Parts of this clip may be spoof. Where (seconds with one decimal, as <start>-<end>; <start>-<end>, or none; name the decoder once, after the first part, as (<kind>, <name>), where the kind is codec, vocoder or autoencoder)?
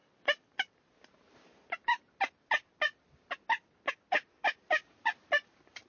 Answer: none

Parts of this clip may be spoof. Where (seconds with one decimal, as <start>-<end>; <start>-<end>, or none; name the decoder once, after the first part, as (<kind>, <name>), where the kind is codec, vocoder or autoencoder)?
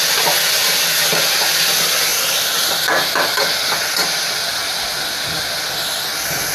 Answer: 2.1-3.4 (vocoder, BigVGAN v2)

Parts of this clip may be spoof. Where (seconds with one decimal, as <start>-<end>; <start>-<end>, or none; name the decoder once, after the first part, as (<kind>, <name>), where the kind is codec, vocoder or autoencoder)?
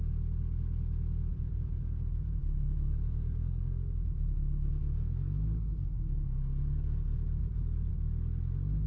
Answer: 1.3-4.7 (vocoder, BigVGAN v2); 7.4-7.9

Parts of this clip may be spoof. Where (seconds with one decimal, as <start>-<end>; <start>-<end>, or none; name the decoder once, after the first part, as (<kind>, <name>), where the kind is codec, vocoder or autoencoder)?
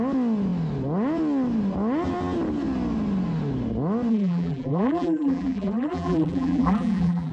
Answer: 4.1-7.3 (vocoder, BigVGAN v2)